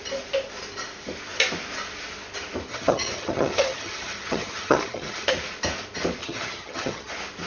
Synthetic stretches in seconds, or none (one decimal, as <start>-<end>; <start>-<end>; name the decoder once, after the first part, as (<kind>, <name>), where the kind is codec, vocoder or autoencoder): 2.7-5.3 (vocoder, HiFi-GAN); 6.2-7.1